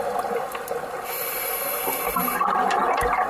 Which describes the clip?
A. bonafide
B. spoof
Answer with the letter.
A